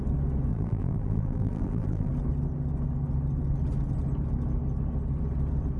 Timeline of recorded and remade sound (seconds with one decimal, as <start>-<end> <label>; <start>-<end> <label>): 0.0-0.5 recorded; 0.5-2.1 remade; 2.1-5.8 recorded